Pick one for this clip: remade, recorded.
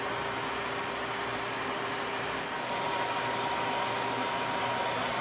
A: recorded